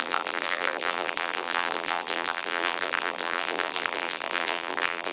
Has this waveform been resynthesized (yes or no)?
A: yes